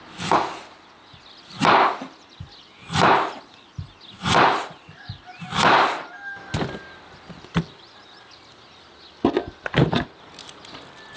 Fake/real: real